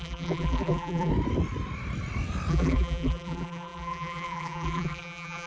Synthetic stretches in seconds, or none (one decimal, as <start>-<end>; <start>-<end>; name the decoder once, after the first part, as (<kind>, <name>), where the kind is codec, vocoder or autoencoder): 0.0-1.1 (vocoder, BigVGAN v2); 2.5-5.5